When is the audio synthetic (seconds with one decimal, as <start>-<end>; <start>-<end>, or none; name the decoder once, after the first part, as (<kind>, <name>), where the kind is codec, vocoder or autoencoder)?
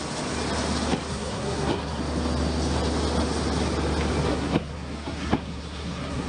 1.1-2.0 (codec, SNAC); 4.3-6.3